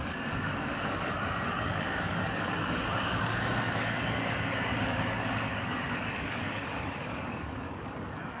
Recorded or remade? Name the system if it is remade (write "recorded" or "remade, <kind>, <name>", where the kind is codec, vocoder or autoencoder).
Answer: remade, codec, DAC